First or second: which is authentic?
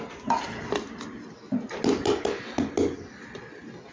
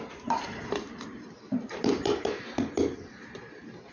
first